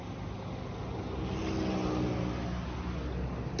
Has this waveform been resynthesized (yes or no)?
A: no